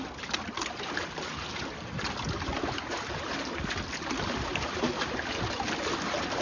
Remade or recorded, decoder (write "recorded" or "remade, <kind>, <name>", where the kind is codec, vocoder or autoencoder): recorded